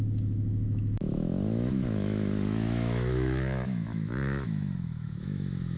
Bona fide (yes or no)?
no